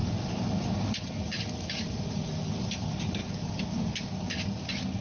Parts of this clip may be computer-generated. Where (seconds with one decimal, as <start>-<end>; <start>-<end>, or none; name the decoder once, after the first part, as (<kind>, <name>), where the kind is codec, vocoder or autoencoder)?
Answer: 3.2-4.0 (codec, DAC)